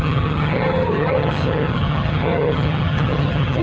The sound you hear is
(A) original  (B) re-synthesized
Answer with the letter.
B